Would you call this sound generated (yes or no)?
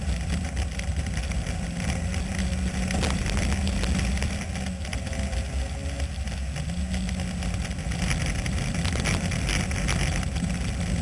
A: no